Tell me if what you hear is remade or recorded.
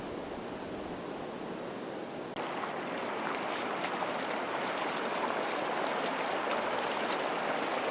recorded